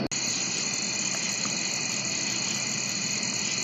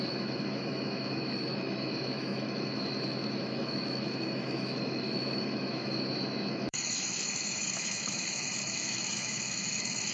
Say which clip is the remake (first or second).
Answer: second